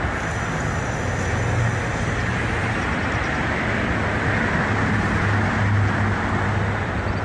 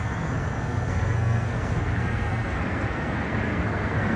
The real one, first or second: first